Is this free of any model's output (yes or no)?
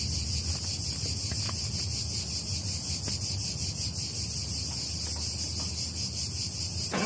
yes